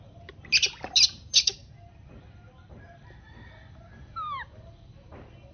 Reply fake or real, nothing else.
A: real